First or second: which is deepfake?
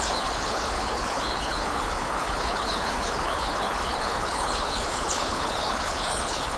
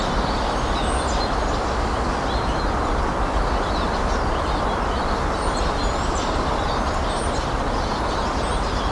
first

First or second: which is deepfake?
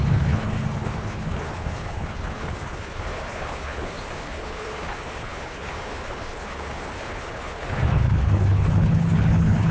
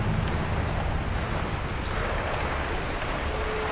first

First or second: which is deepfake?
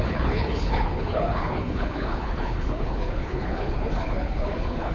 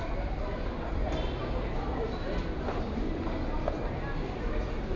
first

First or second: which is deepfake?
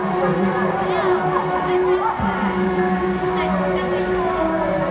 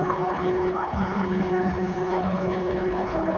second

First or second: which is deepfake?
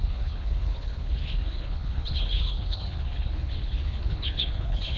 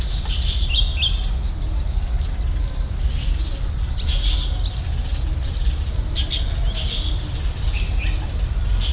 first